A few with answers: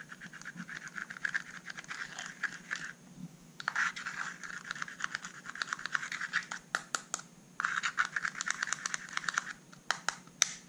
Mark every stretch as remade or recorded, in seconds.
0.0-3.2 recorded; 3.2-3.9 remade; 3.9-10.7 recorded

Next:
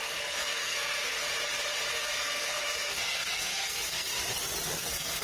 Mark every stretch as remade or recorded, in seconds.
0.0-1.2 remade; 1.2-1.9 recorded; 1.9-4.1 remade; 4.1-4.8 recorded; 4.8-5.2 remade

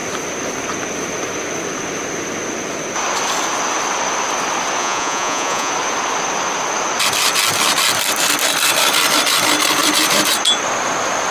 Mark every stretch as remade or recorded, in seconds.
0.0-4.8 recorded; 4.8-5.7 remade; 5.7-11.3 recorded

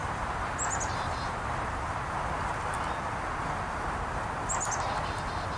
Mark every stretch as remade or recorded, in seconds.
0.0-1.9 remade; 1.9-5.6 recorded